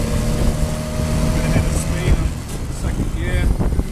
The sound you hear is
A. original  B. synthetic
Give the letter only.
A